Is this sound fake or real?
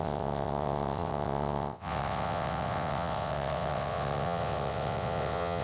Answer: fake